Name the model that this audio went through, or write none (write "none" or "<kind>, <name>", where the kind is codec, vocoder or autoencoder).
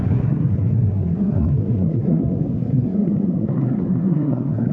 codec, SNAC